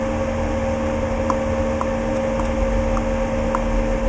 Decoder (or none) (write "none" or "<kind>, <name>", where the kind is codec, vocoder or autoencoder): none